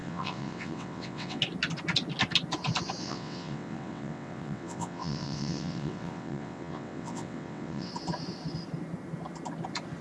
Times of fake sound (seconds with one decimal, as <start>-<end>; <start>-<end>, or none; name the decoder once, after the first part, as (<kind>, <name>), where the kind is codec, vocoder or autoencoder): 0.0-1.4 (vocoder, WaveNeXt); 3.0-7.9